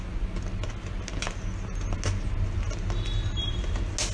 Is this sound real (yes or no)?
yes